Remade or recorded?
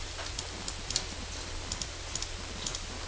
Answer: recorded